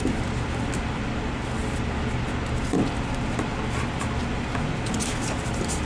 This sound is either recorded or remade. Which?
recorded